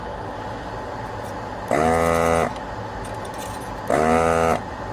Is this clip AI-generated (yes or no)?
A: no